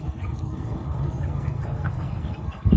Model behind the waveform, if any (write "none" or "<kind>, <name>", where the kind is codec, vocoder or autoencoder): codec, SNAC